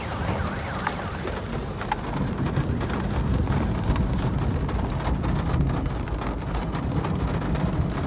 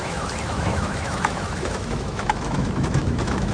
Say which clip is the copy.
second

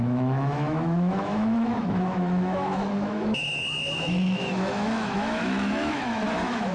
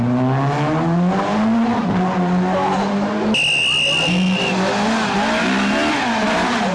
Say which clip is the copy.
first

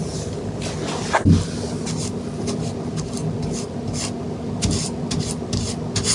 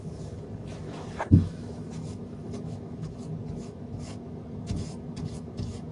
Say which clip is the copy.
second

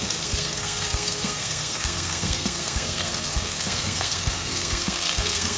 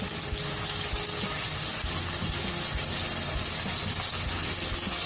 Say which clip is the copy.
first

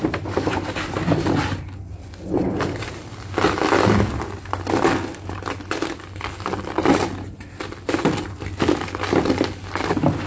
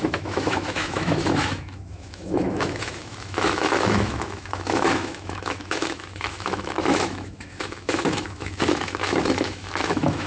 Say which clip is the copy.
second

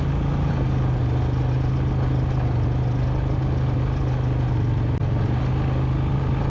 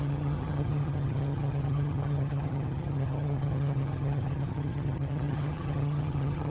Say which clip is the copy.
second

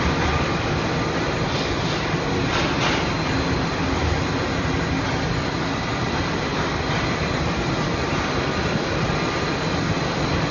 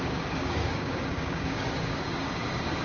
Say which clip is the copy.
second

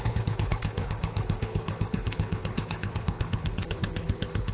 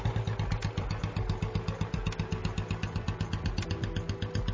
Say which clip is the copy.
first